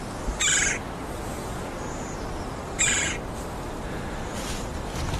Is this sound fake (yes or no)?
no